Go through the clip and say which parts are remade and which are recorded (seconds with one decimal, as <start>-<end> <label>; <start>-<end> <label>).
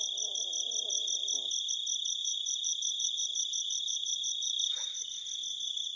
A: 0.0-2.2 recorded; 2.2-5.1 remade; 5.1-6.0 recorded